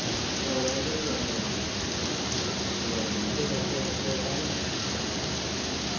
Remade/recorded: recorded